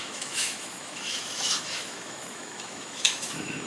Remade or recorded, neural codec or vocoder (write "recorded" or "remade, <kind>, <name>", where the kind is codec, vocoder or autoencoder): remade, autoencoder, DAC-VAE